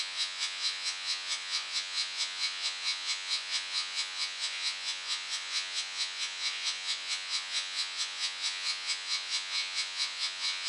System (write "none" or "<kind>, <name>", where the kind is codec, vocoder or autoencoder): vocoder, Vocos